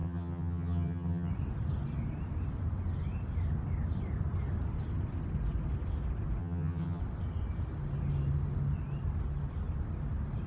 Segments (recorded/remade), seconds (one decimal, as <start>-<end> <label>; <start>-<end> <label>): 0.0-1.3 remade; 1.3-6.4 recorded; 6.4-7.0 remade; 7.0-10.5 recorded